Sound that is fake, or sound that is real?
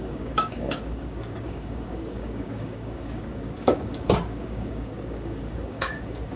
fake